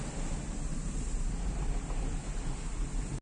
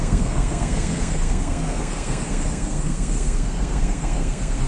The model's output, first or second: second